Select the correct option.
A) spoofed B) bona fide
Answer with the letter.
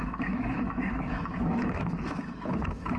A